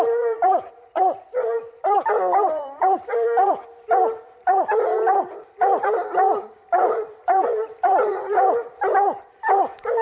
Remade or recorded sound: remade